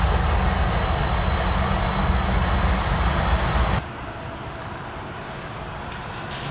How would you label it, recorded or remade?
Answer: recorded